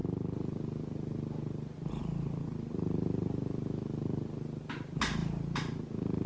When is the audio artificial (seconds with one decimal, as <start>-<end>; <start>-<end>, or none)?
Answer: none